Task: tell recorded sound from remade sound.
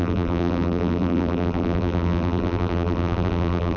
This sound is remade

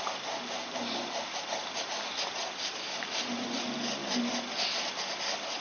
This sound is recorded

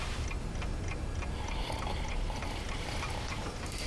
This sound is remade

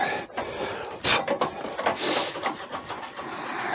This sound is recorded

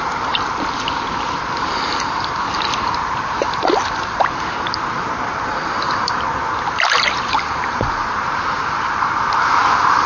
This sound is remade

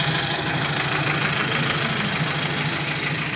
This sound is recorded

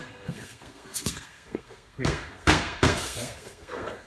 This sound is remade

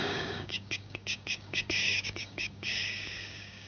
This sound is remade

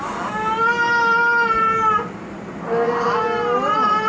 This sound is recorded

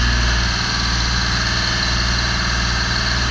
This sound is recorded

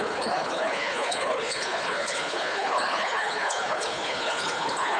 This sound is remade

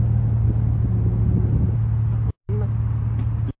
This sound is recorded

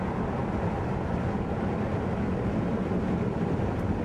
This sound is recorded